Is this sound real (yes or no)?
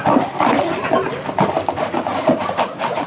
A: yes